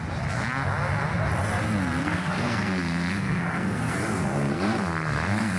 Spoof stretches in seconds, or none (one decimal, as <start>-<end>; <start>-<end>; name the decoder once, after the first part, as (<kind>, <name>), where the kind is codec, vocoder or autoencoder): 2.0-5.6 (codec, SNAC)